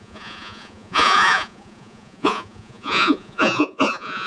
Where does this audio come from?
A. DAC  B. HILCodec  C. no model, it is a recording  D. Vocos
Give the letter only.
D